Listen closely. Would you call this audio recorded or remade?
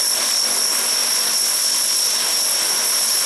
recorded